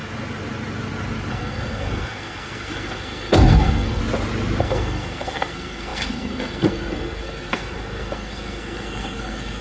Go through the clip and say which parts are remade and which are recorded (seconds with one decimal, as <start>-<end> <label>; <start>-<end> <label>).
0.0-1.3 recorded; 1.3-4.0 remade; 4.0-4.6 recorded; 4.6-9.6 remade

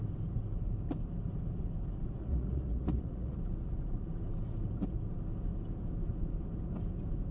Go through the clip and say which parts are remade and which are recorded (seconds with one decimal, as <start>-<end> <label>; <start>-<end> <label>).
0.0-2.2 recorded; 2.2-3.4 remade; 3.4-7.3 recorded

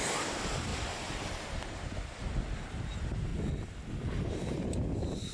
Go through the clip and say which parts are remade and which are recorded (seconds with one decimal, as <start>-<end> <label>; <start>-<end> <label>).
0.0-3.3 remade; 3.3-4.3 recorded; 4.3-5.3 remade

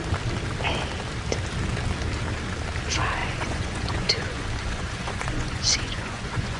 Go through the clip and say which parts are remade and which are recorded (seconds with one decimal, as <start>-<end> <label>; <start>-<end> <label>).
0.0-3.2 recorded; 3.2-6.6 remade

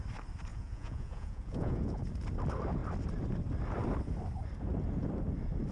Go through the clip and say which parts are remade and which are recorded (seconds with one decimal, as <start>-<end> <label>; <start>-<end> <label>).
0.0-0.5 recorded; 0.5-2.0 remade; 2.0-5.7 recorded